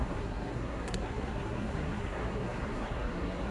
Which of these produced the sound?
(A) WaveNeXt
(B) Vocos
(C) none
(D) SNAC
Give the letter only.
D